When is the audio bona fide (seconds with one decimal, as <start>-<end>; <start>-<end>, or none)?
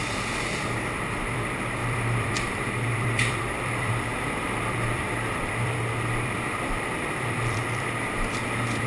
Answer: none